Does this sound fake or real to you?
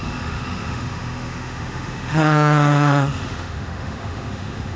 fake